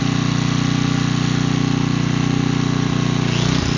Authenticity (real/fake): real